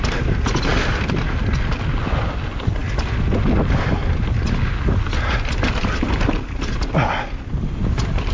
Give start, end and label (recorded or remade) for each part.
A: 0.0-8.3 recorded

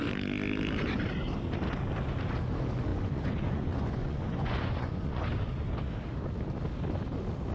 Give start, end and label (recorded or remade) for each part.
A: 0.0-2.9 recorded; 2.9-5.3 remade; 5.3-7.5 recorded

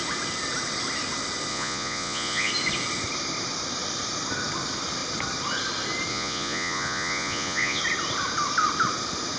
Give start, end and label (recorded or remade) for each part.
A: 0.0-1.5 recorded; 1.5-2.5 remade; 2.5-6.1 recorded; 6.1-7.8 remade; 7.8-9.4 recorded